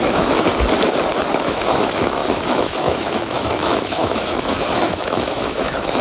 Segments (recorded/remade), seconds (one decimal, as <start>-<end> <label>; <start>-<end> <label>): 0.0-0.5 remade; 0.5-1.3 recorded; 1.3-6.0 remade